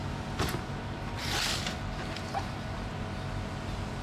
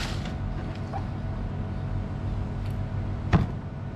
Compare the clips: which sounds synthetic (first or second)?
first